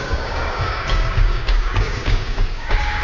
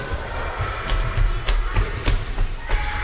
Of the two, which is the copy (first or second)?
first